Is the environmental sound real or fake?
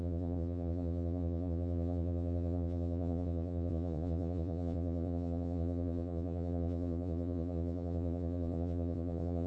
fake